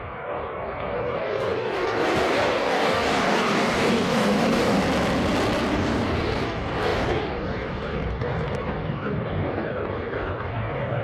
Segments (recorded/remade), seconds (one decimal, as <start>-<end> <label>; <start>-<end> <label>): 0.0-4.8 remade; 4.8-5.7 recorded; 5.7-11.0 remade